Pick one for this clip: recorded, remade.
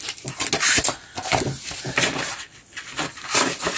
recorded